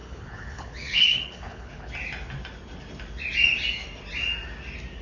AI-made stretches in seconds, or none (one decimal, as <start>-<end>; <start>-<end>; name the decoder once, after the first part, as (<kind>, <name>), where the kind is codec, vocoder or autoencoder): 0.0-1.9 (codec, HILCodec)